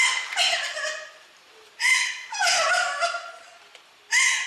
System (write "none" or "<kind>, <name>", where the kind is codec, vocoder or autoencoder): none